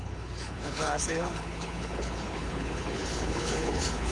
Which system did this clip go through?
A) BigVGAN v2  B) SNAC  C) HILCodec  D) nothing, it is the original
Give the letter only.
C